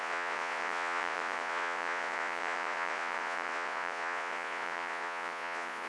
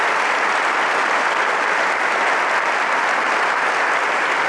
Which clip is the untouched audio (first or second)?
second